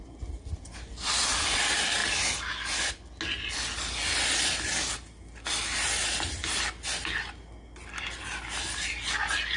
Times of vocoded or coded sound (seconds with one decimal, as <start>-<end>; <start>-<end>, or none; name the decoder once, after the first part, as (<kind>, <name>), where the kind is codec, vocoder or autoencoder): none